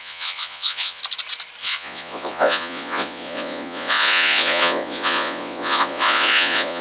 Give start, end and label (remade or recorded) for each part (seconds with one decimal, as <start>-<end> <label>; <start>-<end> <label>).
0.0-1.0 remade; 1.0-1.6 recorded; 1.6-6.8 remade